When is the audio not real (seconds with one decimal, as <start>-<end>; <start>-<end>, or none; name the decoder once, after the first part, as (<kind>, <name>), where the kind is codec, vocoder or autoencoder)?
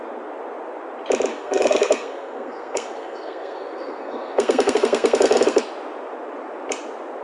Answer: 1.3-5.6 (codec, SNAC)